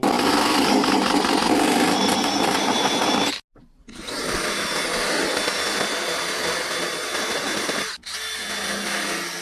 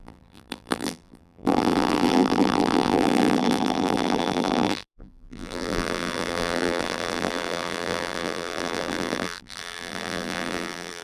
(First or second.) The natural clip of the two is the first